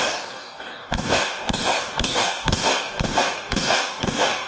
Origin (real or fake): fake